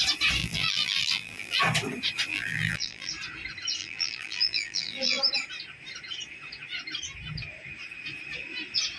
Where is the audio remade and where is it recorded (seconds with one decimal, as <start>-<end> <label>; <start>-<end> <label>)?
0.0-0.4 recorded; 0.4-1.6 remade; 1.6-2.3 recorded; 2.3-3.1 remade; 3.1-3.8 recorded; 3.8-5.2 remade; 5.2-9.0 recorded